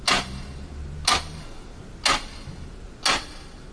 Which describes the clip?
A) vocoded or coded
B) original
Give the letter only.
B